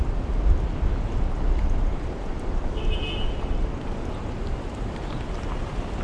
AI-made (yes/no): no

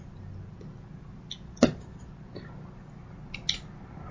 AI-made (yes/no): no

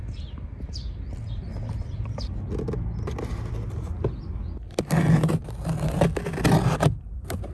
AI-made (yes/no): no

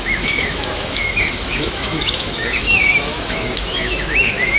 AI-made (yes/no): yes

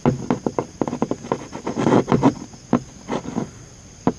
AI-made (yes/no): no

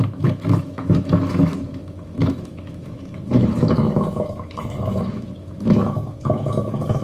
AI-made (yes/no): yes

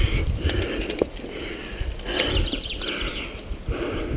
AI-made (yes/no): no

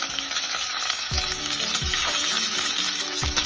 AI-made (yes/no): yes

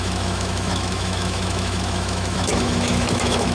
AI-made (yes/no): yes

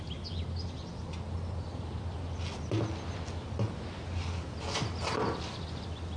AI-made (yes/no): no